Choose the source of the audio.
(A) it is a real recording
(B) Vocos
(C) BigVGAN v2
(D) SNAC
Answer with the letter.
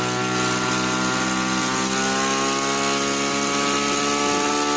A